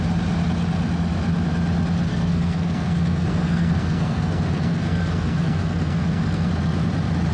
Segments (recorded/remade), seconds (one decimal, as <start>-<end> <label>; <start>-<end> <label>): 0.0-2.1 recorded; 2.1-6.5 remade; 6.5-7.3 recorded